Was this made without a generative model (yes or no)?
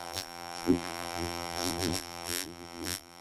no